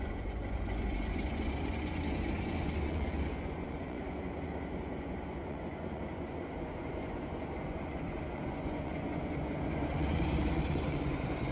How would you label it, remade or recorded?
remade